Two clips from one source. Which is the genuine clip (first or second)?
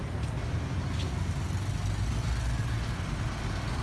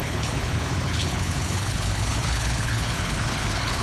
first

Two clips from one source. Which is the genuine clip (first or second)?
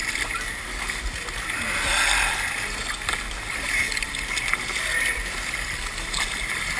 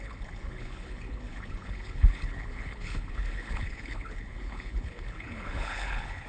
first